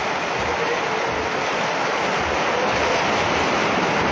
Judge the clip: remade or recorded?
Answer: recorded